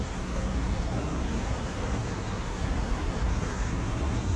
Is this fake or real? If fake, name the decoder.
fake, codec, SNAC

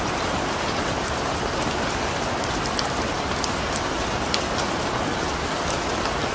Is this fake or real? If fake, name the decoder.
real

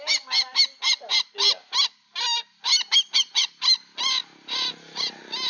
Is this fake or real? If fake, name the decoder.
real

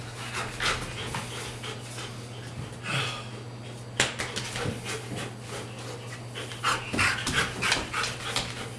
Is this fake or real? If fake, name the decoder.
real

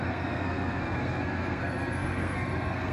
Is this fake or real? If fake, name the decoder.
fake, codec, SNAC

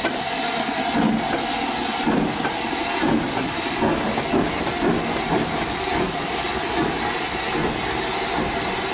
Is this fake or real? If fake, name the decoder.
real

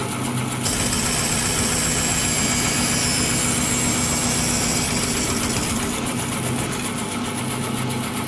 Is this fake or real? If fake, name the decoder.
real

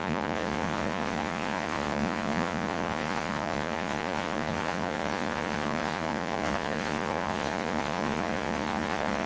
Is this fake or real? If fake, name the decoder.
fake, vocoder, Vocos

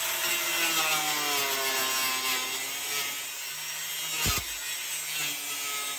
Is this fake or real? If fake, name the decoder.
real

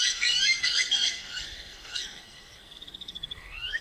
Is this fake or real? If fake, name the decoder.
fake, codec, SNAC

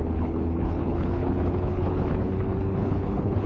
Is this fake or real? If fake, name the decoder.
fake, codec, HILCodec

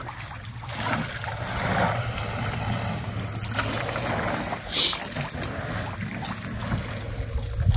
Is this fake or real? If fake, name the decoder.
real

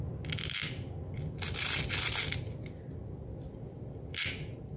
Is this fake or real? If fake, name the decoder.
real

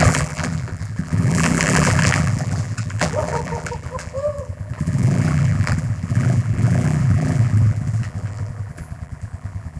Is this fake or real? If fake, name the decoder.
fake, vocoder, BigVGAN v2